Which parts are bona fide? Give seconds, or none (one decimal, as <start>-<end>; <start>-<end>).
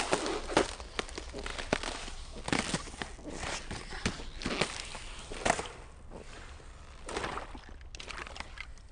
0.0-8.9